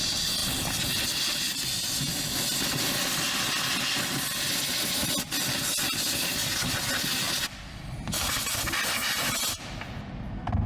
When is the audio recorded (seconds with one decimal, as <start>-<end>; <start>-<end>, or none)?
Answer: 0.0-10.7